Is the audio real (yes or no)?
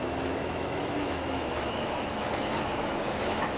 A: no